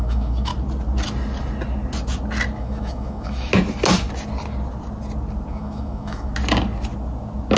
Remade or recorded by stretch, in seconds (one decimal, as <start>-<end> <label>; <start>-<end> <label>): 0.0-0.5 remade; 0.5-2.6 recorded; 2.6-3.5 remade; 3.5-5.5 recorded; 5.5-6.3 remade; 6.3-7.6 recorded